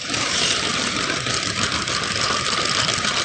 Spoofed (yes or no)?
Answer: yes